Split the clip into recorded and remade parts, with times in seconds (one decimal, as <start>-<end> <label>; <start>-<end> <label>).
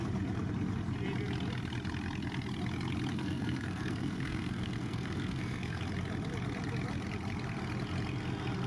0.0-3.1 recorded; 3.1-5.8 remade; 5.8-8.7 recorded